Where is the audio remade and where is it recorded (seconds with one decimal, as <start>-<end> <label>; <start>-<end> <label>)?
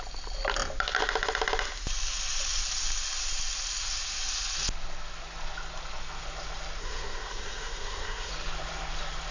0.0-6.8 recorded; 6.8-8.3 remade; 8.3-9.3 recorded